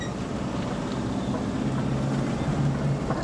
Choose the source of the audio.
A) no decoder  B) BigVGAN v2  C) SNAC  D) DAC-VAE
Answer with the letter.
A